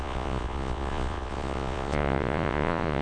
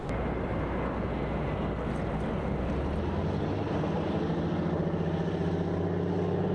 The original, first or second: second